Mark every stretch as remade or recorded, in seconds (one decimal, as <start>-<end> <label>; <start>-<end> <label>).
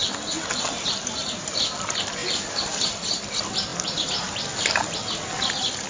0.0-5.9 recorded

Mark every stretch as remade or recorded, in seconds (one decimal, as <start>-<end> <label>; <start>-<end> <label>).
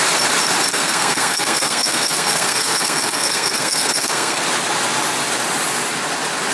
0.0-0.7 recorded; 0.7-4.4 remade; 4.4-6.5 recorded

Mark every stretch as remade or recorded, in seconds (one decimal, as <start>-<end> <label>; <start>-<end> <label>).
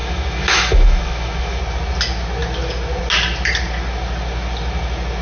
0.0-1.6 remade; 1.6-5.2 recorded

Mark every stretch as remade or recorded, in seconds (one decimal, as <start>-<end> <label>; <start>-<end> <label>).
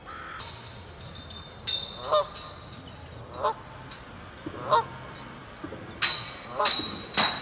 0.0-7.4 recorded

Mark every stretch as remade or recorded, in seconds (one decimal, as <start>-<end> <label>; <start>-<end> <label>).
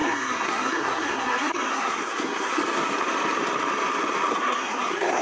0.0-2.6 remade; 2.6-4.3 recorded; 4.3-5.2 remade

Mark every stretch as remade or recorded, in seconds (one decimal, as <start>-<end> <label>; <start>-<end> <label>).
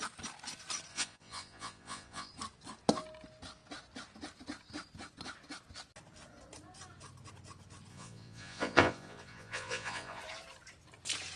0.0-0.9 recorded; 0.9-2.3 remade; 2.3-7.9 recorded; 7.9-10.2 remade; 10.2-11.4 recorded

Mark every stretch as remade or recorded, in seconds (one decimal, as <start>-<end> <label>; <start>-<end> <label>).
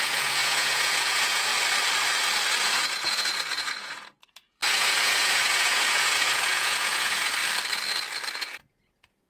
0.0-1.5 remade; 1.5-2.6 recorded; 2.6-7.4 remade; 7.4-8.3 recorded; 8.3-9.3 remade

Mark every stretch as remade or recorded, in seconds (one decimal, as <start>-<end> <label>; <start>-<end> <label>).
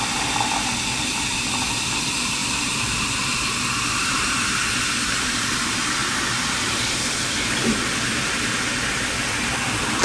0.0-10.0 remade